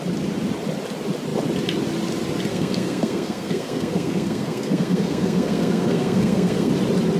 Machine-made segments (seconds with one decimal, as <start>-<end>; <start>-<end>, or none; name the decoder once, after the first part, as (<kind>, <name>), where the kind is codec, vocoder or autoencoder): 2.5-6.7 (codec, SNAC)